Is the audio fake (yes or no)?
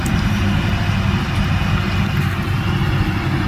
no